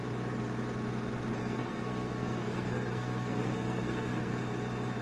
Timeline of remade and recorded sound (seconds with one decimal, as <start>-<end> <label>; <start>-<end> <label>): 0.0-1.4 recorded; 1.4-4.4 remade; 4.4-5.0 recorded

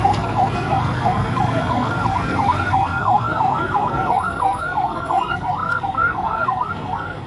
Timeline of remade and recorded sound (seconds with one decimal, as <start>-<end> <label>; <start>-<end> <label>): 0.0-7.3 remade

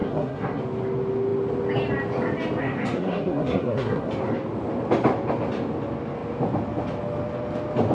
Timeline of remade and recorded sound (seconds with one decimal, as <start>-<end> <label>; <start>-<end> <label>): 0.0-0.6 remade; 0.6-2.6 recorded; 2.6-4.1 remade; 4.1-7.9 recorded

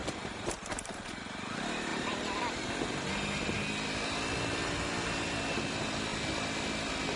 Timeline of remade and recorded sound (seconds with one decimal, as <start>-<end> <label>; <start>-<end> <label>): 0.0-1.2 remade; 1.2-1.9 recorded; 1.9-2.7 remade; 2.7-7.2 recorded